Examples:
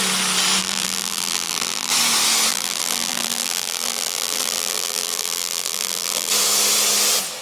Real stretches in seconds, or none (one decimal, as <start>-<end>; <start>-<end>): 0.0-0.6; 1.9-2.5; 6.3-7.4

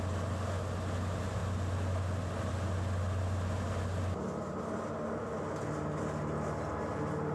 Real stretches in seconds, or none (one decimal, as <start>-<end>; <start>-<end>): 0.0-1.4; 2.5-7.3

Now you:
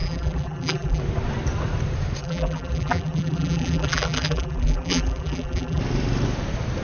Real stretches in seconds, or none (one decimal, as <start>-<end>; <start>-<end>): 1.0-2.2; 5.8-6.8

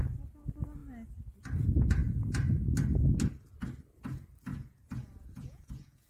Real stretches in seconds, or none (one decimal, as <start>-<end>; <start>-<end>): 0.0-4.5